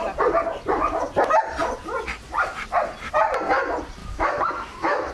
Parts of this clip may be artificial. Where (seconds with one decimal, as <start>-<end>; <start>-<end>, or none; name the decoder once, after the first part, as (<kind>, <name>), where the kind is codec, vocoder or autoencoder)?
4.0-5.1 (autoencoder, DAC-VAE)